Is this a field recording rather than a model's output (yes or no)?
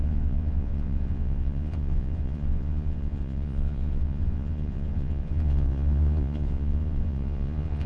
no